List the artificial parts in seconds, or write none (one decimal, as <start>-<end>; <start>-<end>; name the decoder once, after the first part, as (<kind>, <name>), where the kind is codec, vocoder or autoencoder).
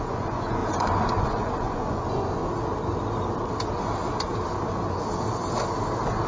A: 0.0-0.6 (vocoder, Vocos); 1.2-2.4